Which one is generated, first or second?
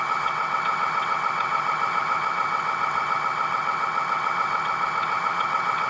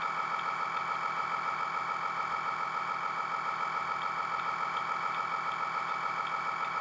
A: first